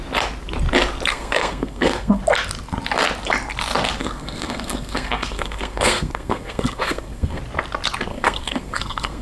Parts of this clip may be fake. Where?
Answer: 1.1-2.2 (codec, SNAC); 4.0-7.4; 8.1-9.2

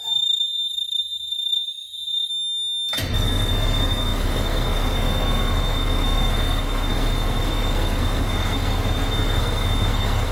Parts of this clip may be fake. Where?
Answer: 0.0-2.3 (codec, SNAC); 3.1-10.3

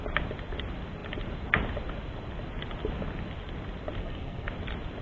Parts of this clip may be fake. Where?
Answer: 4.0-4.5 (codec, SNAC)

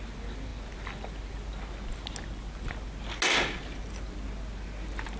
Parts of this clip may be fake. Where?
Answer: none